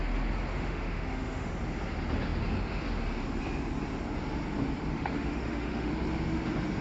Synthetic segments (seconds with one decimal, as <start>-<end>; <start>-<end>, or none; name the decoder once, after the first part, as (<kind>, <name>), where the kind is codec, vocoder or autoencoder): 0.5-1.5 (autoencoder, DAC-VAE); 4.9-5.9